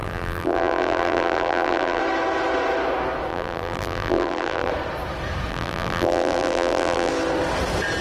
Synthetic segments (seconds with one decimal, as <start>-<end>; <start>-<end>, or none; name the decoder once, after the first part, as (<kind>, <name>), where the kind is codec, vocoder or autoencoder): 0.0-2.0 (vocoder, BigVGAN v2); 3.3-4.7; 5.5-7.1